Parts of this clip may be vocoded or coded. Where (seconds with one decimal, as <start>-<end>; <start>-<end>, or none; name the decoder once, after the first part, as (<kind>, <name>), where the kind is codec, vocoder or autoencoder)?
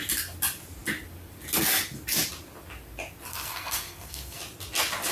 3.3-4.4 (codec, SNAC)